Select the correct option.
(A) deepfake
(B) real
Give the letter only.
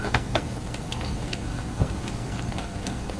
A